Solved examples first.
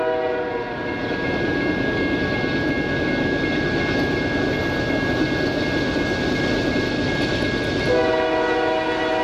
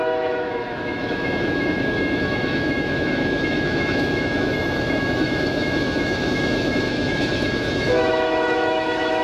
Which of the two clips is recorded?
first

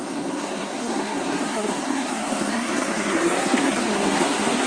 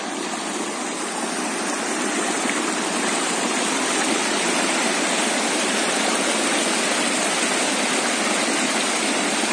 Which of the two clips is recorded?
second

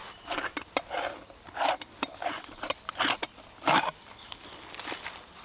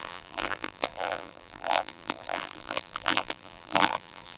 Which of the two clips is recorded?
first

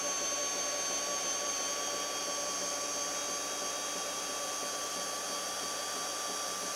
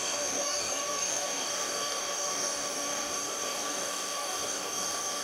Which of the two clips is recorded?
first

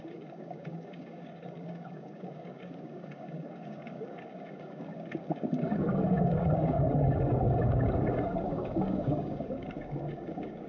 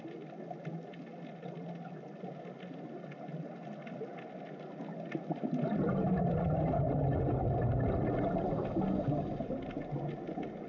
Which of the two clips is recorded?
second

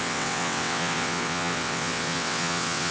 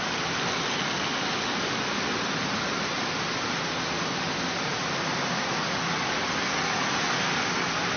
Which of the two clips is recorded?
second